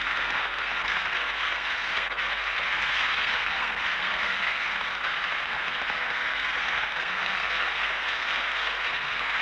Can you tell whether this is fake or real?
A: fake